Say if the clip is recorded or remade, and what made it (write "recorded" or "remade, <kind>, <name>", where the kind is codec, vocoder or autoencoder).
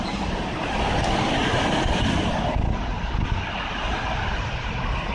recorded